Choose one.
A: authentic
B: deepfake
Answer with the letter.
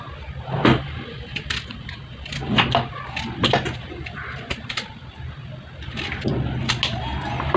A